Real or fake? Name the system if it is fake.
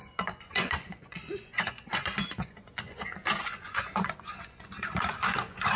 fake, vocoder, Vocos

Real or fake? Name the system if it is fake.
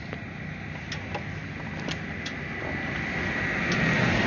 real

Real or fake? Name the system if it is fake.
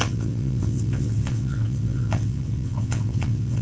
fake, vocoder, WaveNeXt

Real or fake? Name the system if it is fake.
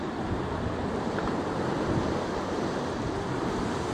real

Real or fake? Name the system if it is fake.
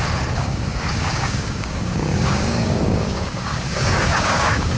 fake, codec, DAC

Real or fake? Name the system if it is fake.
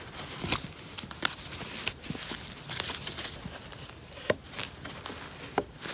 real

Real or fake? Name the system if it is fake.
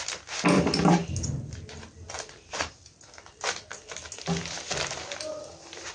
real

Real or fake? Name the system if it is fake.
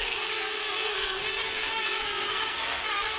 fake, codec, SNAC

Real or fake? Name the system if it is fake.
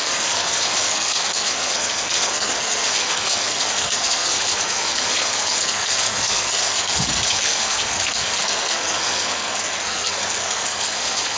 fake, codec, SNAC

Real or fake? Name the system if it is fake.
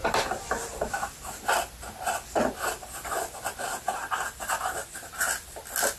real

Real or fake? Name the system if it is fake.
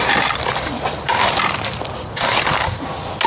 real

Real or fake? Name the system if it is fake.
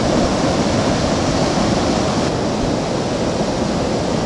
real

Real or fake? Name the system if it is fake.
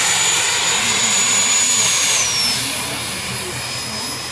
real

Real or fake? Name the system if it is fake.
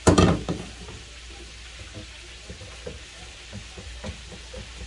real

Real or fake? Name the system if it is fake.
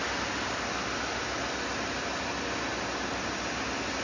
real